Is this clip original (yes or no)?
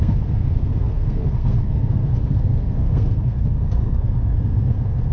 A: no